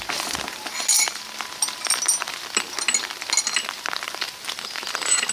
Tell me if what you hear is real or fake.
real